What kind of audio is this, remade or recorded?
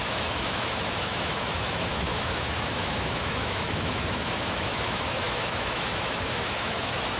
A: remade